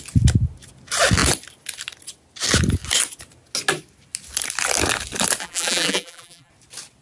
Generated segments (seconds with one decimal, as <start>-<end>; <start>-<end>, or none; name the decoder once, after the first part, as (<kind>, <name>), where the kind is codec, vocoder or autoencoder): 5.4-6.5 (vocoder, BigVGAN v2)